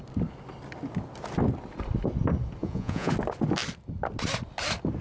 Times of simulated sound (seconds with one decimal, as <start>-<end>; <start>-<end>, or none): 2.6-3.1